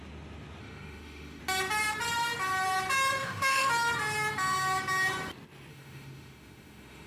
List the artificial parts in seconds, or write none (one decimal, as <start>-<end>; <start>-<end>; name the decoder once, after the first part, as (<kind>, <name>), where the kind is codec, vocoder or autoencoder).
0.6-1.4 (autoencoder, DAC-VAE); 3.2-3.7; 5.7-7.1